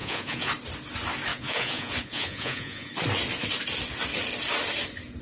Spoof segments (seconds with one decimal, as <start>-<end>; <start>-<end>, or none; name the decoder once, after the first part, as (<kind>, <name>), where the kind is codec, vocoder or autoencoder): 0.0-0.5 (vocoder, Vocos); 1.3-2.9

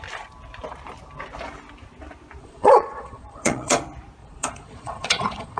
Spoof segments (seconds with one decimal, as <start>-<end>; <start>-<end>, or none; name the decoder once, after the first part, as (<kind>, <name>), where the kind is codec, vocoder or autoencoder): 2.4-3.8 (vocoder, Vocos); 4.2-5.6

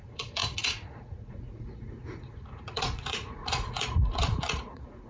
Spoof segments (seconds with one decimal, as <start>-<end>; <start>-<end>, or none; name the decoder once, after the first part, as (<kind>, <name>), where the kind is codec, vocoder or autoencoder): 0.0-5.1 (vocoder, Vocos)

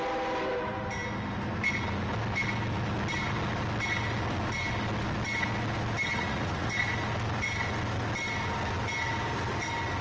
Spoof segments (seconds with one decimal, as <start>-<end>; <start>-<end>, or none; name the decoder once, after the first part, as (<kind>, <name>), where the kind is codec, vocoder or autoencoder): 6.1-6.7 (vocoder, Vocos)

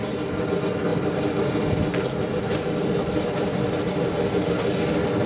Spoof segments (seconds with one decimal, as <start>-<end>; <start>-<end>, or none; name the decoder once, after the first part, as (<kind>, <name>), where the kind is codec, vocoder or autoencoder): none

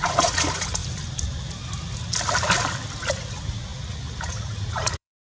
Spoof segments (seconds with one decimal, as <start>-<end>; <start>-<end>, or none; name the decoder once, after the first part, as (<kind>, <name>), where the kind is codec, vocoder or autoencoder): 0.0-0.8 (vocoder, Vocos); 3.2-5.3

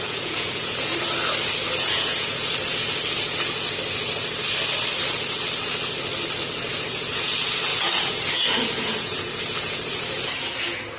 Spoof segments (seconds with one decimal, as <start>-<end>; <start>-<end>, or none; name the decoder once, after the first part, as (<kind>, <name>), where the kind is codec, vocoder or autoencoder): 0.0-0.9 (vocoder, Vocos); 1.7-2.5; 6.7-11.0

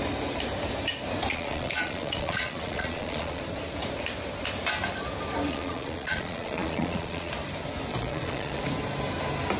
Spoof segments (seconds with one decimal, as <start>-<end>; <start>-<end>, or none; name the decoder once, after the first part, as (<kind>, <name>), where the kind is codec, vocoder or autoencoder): 1.3-3.4 (vocoder, Vocos); 5.5-7.3; 7.9-8.6